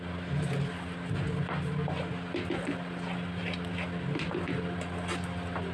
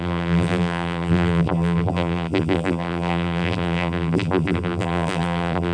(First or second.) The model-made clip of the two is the second